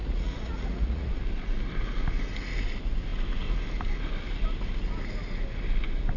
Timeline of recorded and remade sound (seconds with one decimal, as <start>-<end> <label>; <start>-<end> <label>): 0.0-1.1 remade; 1.1-6.2 recorded